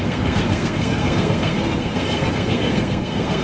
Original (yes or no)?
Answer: no